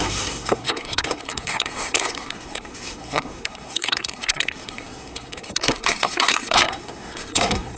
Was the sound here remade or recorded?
remade